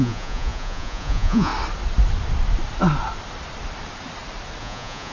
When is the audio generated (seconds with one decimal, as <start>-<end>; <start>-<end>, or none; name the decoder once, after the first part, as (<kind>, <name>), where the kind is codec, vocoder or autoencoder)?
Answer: 0.0-1.5 (vocoder, Vocos); 4.6-5.1